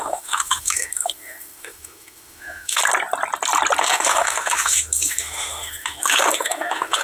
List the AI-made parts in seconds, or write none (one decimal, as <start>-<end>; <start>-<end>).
0.0-2.8; 3.8-7.0